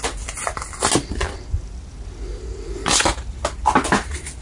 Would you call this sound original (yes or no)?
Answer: yes